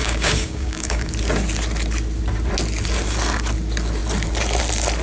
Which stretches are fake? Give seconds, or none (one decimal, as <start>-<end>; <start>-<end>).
0.0-1.1